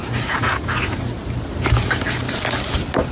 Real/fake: real